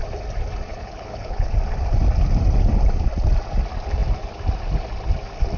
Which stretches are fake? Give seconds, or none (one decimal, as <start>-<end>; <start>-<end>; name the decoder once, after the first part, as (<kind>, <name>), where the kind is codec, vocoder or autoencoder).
0.7-1.5 (codec, HILCodec)